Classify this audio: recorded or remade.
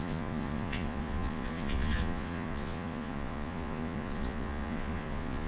remade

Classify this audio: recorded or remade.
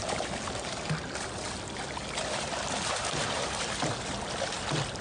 recorded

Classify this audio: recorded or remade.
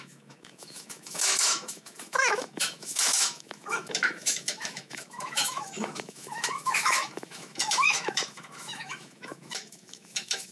remade